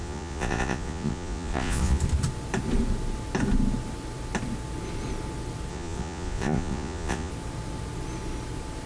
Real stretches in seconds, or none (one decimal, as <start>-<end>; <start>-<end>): 2.0-5.7; 7.3-8.9